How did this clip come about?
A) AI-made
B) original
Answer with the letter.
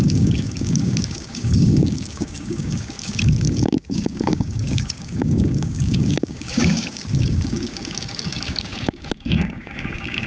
A